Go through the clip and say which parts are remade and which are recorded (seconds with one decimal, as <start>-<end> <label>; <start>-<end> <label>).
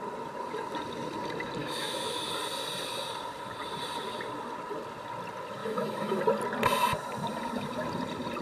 0.0-1.6 recorded; 1.6-2.3 remade; 2.3-5.6 recorded; 5.6-6.2 remade; 6.2-8.4 recorded